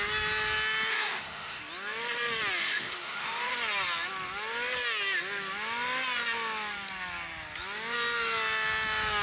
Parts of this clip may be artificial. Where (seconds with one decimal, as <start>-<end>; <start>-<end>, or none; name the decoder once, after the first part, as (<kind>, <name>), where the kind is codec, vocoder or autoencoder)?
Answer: 0.9-1.6 (autoencoder, DAC-VAE); 2.6-3.5